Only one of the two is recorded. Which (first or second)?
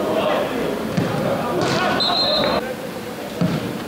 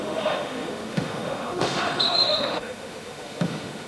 first